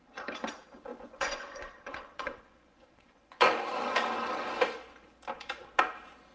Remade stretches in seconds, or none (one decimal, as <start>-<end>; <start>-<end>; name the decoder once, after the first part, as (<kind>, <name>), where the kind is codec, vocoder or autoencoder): 0.9-3.5 (vocoder, Vocos)